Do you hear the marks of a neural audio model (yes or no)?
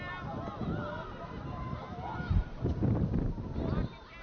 no